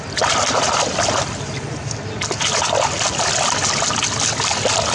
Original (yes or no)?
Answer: yes